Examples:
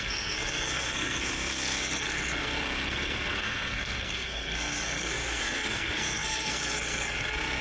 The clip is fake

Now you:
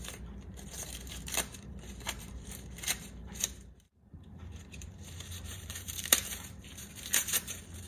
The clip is fake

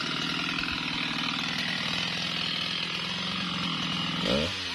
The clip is real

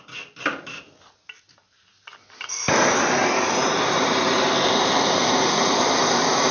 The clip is real